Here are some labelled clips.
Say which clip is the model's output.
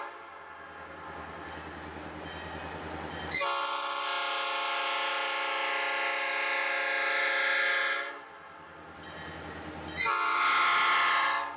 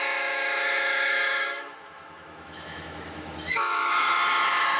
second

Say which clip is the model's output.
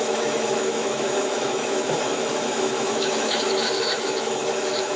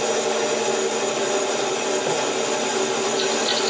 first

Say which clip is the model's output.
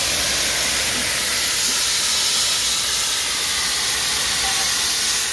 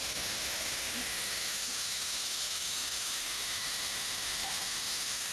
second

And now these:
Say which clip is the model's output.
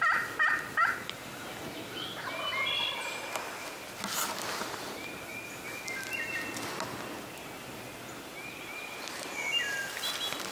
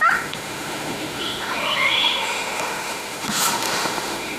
second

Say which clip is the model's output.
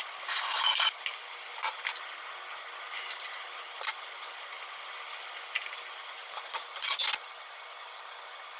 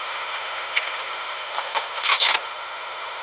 second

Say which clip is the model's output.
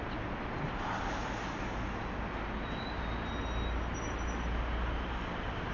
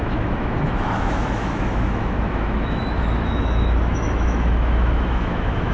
second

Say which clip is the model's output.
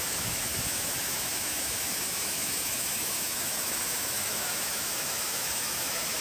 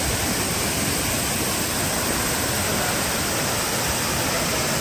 first